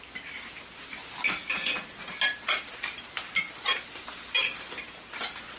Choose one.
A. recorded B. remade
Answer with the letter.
A